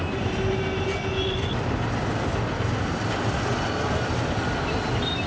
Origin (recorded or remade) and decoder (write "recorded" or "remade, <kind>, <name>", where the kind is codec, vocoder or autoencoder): recorded